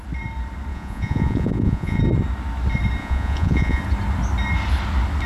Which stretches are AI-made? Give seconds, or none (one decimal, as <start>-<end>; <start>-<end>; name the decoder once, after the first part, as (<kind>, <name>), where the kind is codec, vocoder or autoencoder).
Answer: 0.7-2.0 (vocoder, Vocos); 3.0-3.8